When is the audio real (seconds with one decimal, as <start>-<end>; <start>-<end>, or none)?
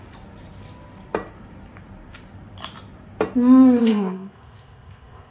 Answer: 0.0-3.8